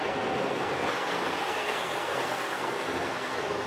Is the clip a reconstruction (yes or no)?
yes